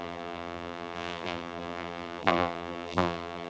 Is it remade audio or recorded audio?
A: remade